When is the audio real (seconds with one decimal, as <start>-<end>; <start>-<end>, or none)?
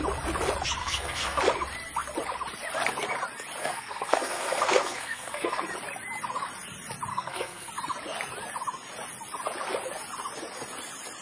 0.0-0.8; 1.4-3.6; 5.6-7.1; 7.7-11.2